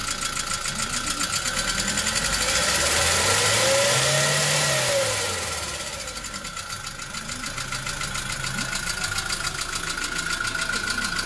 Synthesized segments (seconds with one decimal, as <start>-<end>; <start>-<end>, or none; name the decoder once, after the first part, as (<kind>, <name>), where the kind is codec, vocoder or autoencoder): none